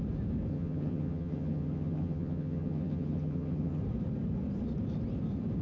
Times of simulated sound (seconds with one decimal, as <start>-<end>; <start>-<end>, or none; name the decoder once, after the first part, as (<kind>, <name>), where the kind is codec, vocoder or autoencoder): 0.5-3.8 (vocoder, HiFi-GAN)

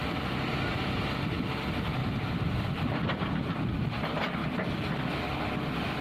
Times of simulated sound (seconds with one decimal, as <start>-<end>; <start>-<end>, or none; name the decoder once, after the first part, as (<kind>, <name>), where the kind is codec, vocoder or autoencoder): none